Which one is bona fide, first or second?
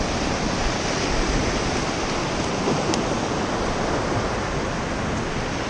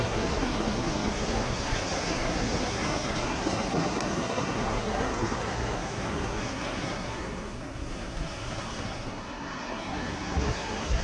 first